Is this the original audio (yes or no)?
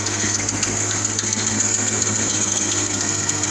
no